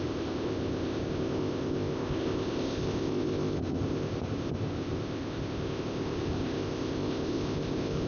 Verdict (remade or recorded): remade